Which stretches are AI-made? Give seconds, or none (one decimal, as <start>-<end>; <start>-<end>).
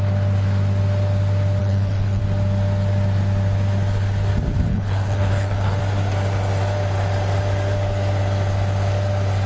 1.6-2.2; 4.7-5.8